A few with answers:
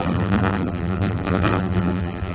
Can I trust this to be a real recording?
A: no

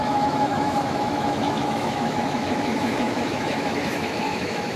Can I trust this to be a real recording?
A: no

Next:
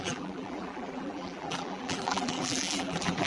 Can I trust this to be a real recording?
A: no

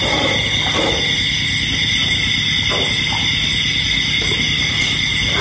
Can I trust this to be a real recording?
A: yes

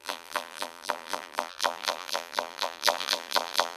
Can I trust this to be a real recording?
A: no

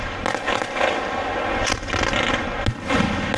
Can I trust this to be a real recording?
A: yes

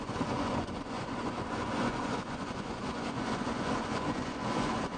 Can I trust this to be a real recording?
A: no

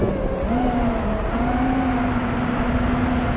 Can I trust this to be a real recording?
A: yes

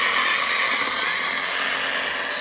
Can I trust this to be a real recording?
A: yes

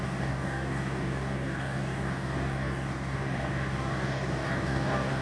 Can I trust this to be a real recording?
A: no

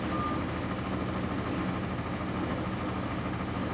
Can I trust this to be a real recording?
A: yes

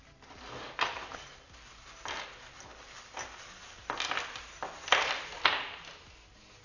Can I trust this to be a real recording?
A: yes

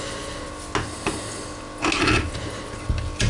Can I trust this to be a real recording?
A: yes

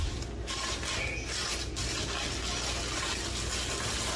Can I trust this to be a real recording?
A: yes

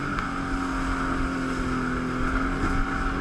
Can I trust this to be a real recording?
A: yes